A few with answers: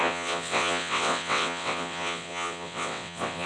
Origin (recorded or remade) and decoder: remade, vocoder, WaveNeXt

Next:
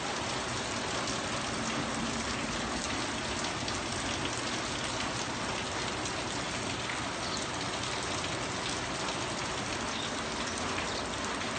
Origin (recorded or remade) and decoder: recorded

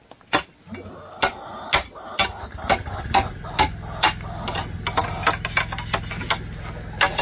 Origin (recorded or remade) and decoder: recorded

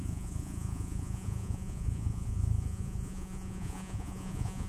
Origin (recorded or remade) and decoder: remade, vocoder, Vocos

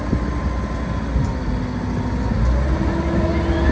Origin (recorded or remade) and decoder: recorded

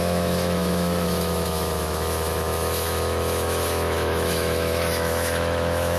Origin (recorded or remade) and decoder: remade, autoencoder, DAC-VAE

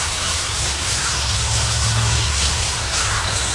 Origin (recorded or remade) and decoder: remade, codec, SNAC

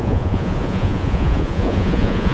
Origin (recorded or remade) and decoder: remade, vocoder, Vocos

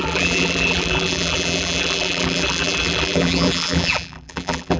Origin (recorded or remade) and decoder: remade, vocoder, BigVGAN v2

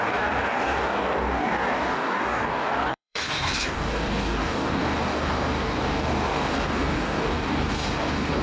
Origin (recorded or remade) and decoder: remade, codec, DAC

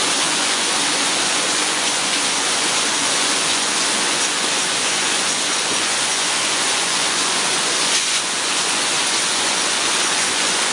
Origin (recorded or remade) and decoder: remade, vocoder, Vocos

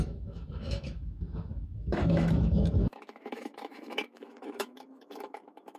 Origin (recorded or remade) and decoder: remade, autoencoder, DAC-VAE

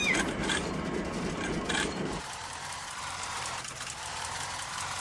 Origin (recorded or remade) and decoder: remade, vocoder, BigVGAN v2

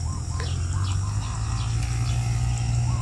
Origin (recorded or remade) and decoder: recorded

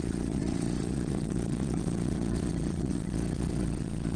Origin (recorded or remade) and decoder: remade, vocoder, Vocos